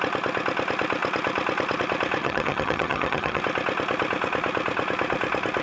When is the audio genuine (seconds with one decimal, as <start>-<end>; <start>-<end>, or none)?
0.0-2.2; 3.4-5.6